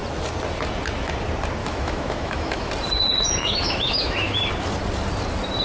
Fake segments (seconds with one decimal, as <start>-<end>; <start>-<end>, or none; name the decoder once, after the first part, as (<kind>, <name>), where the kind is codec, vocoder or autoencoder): 1.6-2.7 (autoencoder, DAC-VAE); 3.4-4.5